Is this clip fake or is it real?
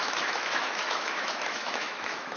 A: fake